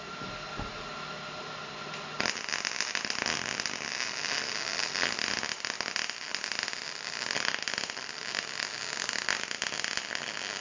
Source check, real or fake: real